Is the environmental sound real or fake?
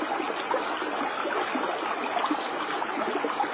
real